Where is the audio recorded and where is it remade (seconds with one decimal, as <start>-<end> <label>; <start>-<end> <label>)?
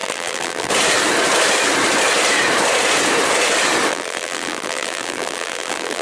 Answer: 0.0-0.7 remade; 0.7-3.9 recorded; 3.9-6.0 remade